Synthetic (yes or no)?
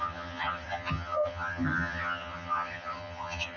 yes